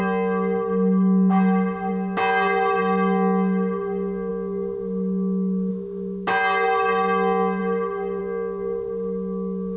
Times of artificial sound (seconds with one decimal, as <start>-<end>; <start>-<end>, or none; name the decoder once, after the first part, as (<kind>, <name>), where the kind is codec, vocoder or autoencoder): none